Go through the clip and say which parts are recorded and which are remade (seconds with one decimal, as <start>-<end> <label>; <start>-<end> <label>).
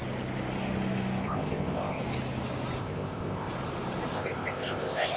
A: 0.0-1.2 recorded; 1.2-2.0 remade; 2.0-2.8 recorded; 2.8-3.5 remade; 3.5-4.1 recorded; 4.1-5.2 remade